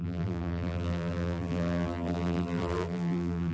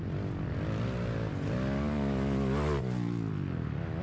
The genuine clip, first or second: second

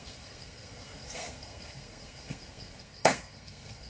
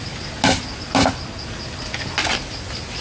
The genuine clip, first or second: second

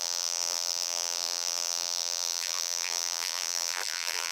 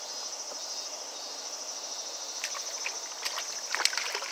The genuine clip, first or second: second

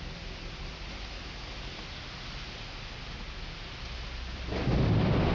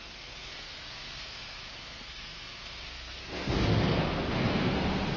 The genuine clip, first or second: first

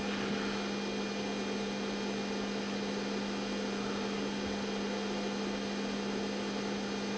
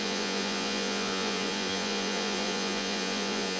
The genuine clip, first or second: first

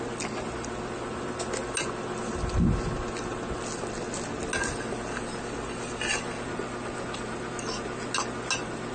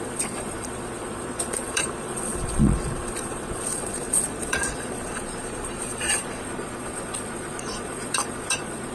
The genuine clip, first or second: first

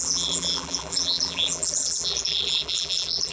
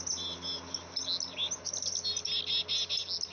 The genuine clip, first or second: second